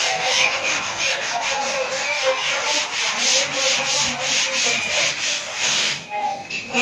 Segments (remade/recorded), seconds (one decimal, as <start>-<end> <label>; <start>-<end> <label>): 0.0-2.5 remade; 2.5-5.1 recorded; 5.1-6.8 remade